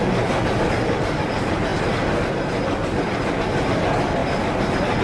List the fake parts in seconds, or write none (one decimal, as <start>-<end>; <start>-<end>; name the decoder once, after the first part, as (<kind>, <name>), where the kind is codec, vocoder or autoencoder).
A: none